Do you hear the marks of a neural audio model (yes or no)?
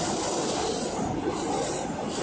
no